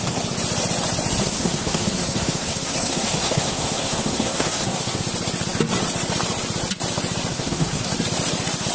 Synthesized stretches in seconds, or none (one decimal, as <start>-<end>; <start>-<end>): 1.2-5.0; 7.3-7.9